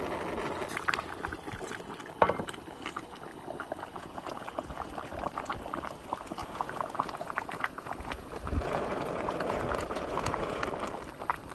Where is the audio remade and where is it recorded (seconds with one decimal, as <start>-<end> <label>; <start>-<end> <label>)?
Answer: 0.0-3.9 recorded; 3.9-4.9 remade; 4.9-6.4 recorded; 6.4-10.6 remade; 10.6-11.5 recorded